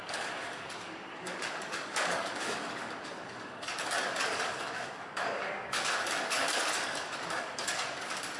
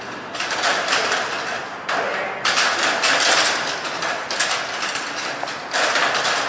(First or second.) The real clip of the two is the second